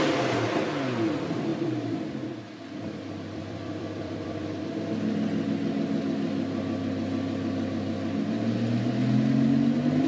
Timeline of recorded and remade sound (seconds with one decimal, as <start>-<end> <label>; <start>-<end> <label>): 0.0-1.5 recorded; 1.5-4.6 remade; 4.6-10.1 recorded